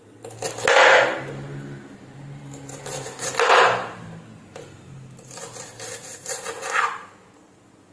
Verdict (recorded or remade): recorded